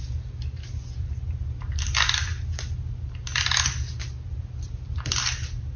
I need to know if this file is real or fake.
real